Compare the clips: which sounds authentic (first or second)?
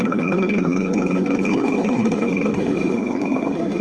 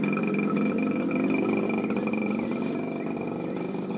second